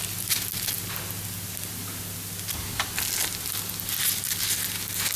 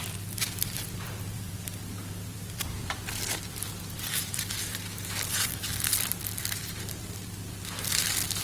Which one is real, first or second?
first